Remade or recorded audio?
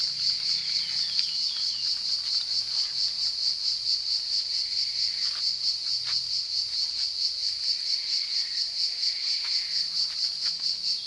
recorded